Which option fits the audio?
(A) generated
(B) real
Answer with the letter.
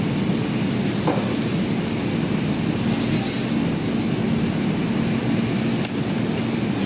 B